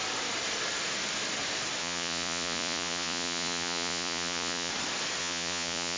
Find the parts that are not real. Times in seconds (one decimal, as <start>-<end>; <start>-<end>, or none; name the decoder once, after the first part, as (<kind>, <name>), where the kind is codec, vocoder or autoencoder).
1.8-4.7 (vocoder, Vocos); 5.2-6.0